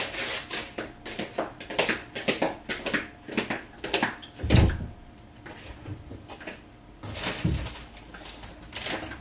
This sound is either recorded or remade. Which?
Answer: recorded